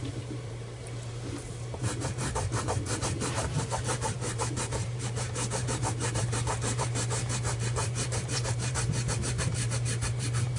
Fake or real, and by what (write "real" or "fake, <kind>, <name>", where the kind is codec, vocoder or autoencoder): fake, vocoder, BigVGAN v2